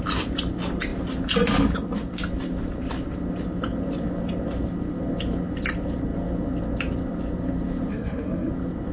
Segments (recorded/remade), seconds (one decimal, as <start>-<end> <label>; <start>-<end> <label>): 0.0-7.9 recorded; 7.9-8.5 remade; 8.5-8.9 recorded